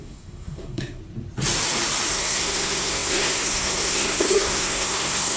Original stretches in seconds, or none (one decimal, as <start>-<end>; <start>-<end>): 1.0-2.1